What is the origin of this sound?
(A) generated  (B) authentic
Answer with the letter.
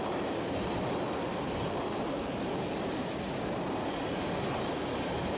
B